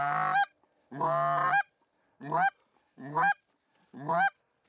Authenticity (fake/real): real